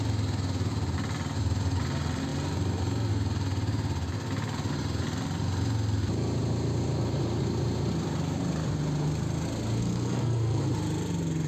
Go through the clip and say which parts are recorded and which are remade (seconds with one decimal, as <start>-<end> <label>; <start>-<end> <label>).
0.0-9.8 recorded; 9.8-10.6 remade; 10.6-11.5 recorded